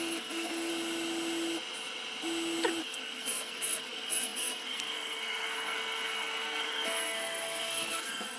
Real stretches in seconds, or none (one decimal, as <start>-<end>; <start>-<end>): 0.7-2.8